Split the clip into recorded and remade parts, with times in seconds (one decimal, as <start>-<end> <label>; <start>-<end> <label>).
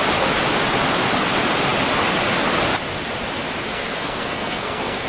0.0-3.7 recorded; 3.7-5.1 remade